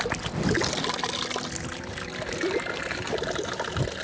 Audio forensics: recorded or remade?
recorded